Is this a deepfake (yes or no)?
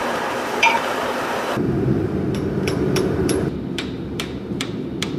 yes